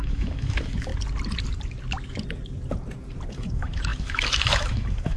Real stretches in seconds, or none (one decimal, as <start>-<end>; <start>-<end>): 0.9-3.3

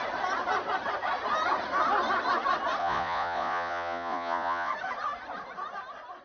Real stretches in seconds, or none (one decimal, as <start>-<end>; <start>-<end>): 0.0-2.8; 4.7-6.2

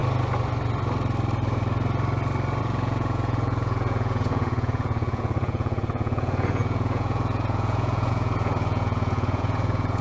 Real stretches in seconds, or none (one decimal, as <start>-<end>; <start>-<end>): 0.0-2.6

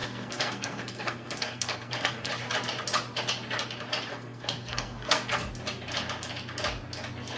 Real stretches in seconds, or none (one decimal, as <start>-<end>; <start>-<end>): 2.3-4.1; 5.5-7.4

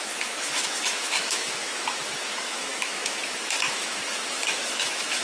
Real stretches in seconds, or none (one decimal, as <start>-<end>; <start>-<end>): none

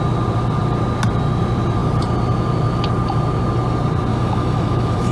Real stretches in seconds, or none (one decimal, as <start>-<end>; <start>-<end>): 0.0-4.1

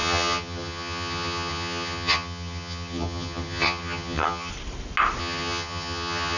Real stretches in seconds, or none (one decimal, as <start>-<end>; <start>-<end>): 4.5-5.2

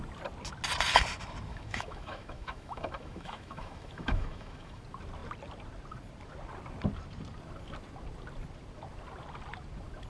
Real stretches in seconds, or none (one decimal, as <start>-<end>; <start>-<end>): 0.0-1.5; 4.8-10.1